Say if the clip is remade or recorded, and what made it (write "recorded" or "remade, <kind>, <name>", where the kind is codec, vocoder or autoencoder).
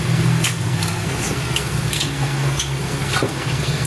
remade, codec, SNAC